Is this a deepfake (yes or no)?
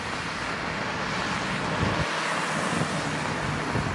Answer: no